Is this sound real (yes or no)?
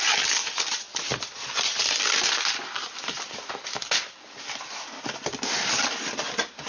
no